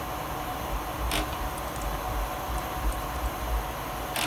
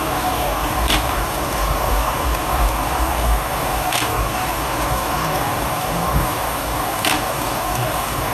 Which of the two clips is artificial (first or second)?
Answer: second